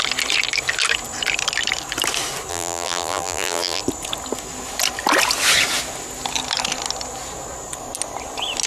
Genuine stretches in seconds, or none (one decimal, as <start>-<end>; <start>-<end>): 0.0-2.5; 3.8-8.7